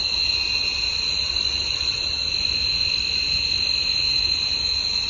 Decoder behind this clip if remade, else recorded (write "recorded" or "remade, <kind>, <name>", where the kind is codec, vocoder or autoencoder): recorded